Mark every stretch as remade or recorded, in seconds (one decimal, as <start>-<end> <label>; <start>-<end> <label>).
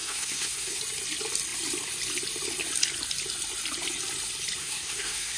0.0-0.8 remade; 0.8-4.6 recorded; 4.6-5.4 remade